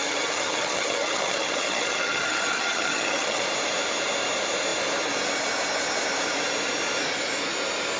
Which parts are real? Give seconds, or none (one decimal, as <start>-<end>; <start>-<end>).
3.4-8.0